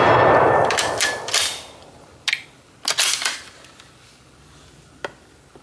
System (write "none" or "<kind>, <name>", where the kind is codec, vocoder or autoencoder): none